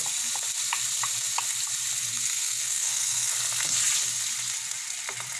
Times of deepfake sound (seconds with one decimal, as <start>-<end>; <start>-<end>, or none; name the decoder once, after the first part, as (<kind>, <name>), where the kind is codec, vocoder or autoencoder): 2.1-3.3 (codec, SNAC)